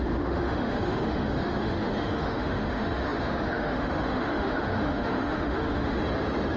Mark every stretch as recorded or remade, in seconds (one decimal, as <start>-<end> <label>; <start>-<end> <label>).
0.0-6.0 remade; 6.0-6.6 recorded